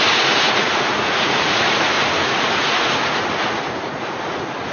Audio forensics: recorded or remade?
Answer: remade